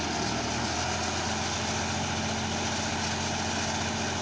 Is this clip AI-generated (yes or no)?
no